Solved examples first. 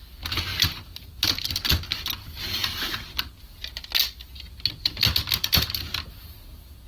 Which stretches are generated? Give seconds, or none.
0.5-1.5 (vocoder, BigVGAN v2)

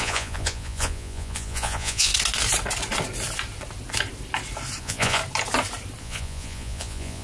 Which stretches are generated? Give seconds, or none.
0.0-2.1 (vocoder, Vocos); 4.8-5.2; 6.0-7.2

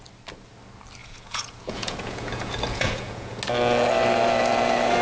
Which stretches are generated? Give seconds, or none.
1.0-3.4 (vocoder, Vocos)

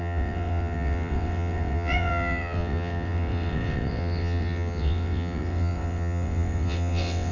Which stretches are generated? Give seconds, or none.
0.0-7.3 (vocoder, WaveNeXt)

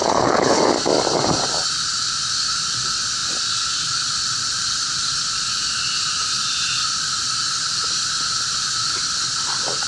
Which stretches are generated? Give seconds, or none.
0.0-0.6 (codec, HILCodec)